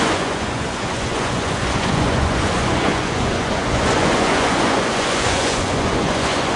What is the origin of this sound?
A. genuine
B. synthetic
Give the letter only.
B